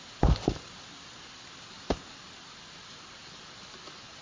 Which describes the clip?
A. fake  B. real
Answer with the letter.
B